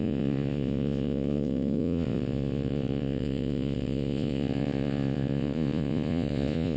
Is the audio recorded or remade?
remade